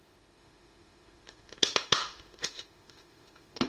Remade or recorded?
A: remade